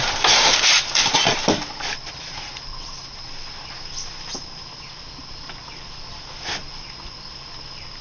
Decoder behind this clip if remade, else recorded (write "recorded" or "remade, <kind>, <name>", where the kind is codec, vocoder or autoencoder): recorded